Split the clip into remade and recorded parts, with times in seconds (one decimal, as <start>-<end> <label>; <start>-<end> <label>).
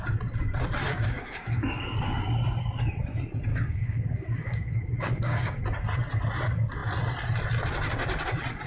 0.0-0.9 recorded; 0.9-2.2 remade; 2.2-3.5 recorded; 3.5-5.6 remade; 5.6-8.7 recorded